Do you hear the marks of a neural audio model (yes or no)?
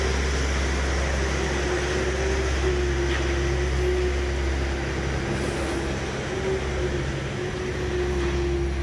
no